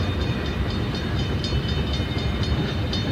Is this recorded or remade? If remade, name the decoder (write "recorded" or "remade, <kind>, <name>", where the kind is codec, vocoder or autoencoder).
remade, vocoder, BigVGAN v2